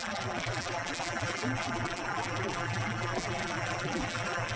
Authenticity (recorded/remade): remade